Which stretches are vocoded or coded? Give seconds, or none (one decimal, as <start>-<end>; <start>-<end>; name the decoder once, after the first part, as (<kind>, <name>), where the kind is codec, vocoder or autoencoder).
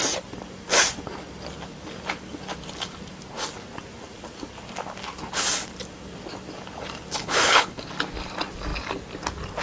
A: 7.2-7.9 (codec, HILCodec)